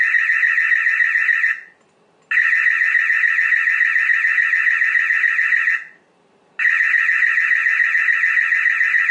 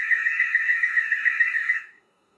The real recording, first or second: first